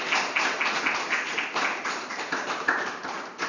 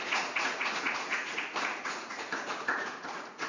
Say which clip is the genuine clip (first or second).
first